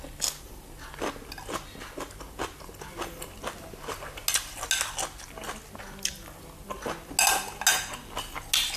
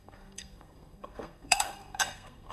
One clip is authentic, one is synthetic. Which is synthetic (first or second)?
second